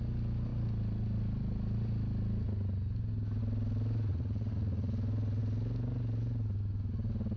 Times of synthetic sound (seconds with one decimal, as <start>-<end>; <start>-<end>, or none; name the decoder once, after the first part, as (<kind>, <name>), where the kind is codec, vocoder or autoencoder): 4.1-4.9 (vocoder, Vocos)